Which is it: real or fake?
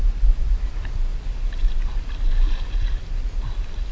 real